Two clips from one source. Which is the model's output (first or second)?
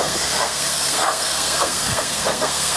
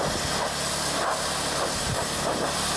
first